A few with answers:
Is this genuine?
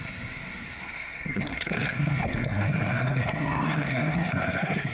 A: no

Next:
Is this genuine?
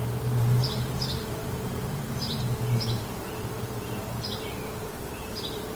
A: no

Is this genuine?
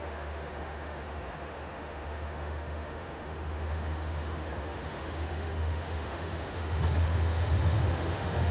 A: no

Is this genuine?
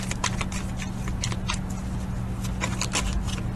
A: yes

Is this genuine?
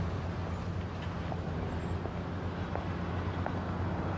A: yes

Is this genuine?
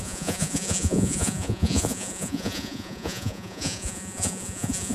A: no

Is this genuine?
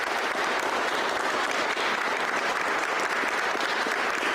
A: yes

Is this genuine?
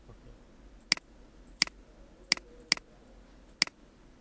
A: yes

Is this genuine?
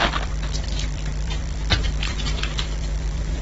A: no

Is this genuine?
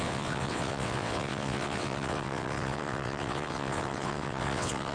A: no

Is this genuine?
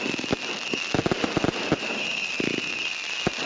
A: yes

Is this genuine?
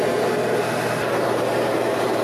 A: yes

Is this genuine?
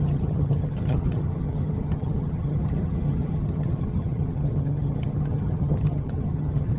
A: no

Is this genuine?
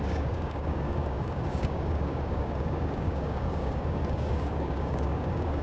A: no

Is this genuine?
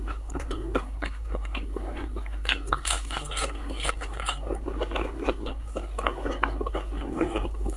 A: no